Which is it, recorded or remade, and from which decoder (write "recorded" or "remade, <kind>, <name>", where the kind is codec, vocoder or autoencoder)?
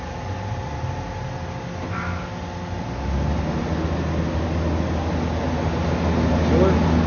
recorded